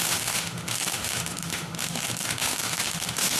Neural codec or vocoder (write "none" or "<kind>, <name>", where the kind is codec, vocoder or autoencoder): autoencoder, DAC-VAE